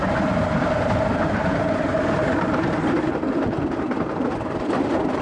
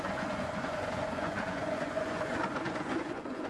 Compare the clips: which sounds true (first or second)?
first